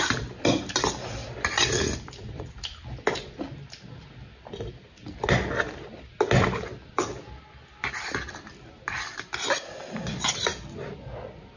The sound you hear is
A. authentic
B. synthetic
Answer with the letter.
A